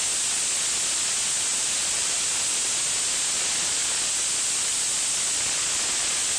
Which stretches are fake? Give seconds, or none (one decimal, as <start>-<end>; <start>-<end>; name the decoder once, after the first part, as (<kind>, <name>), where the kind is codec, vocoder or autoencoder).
1.5-2.2 (vocoder, BigVGAN v2)